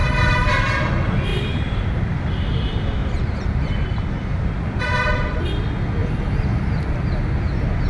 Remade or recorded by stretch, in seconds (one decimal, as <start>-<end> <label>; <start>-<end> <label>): 0.0-0.9 remade; 0.9-1.3 recorded; 1.3-1.9 remade; 1.9-3.0 recorded; 3.0-5.4 remade; 5.4-6.0 recorded; 6.0-6.8 remade; 6.8-7.9 recorded